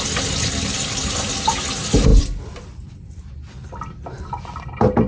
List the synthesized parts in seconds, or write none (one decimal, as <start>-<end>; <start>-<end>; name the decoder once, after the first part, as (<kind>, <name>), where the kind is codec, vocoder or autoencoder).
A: 2.1-3.8 (vocoder, BigVGAN v2)